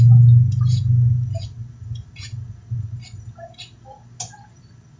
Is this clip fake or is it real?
real